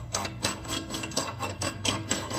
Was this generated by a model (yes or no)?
yes